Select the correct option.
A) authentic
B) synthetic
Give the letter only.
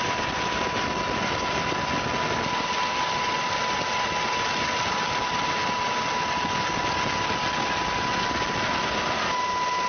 A